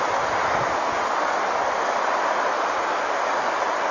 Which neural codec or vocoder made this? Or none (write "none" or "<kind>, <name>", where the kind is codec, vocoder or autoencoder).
none